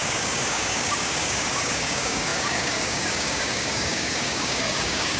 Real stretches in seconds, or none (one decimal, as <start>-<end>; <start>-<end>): none